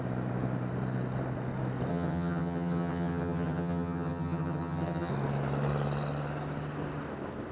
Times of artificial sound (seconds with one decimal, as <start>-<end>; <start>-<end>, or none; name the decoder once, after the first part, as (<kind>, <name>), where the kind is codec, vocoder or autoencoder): 1.9-5.1 (vocoder, HiFi-GAN)